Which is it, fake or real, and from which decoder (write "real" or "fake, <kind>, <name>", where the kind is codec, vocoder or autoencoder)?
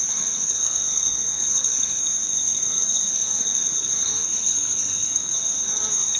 fake, codec, SNAC